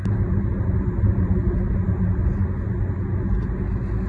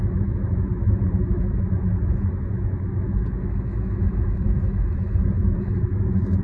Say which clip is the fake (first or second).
second